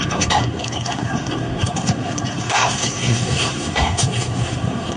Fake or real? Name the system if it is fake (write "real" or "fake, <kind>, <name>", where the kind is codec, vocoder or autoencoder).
fake, codec, SNAC